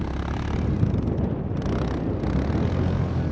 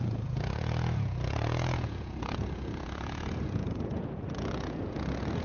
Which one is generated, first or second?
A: second